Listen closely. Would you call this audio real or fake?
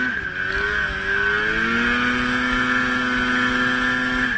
real